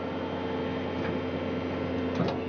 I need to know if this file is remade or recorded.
recorded